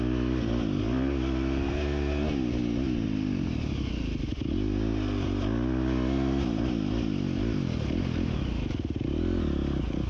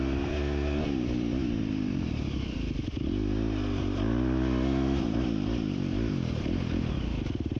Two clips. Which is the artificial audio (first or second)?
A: second